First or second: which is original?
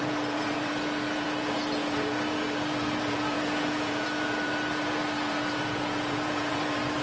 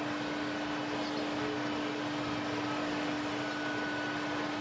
second